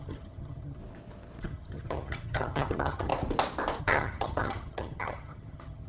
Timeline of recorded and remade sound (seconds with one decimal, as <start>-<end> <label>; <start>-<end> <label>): 0.0-0.8 remade; 0.8-1.4 recorded; 1.4-3.1 remade; 3.1-3.8 recorded; 3.8-5.9 remade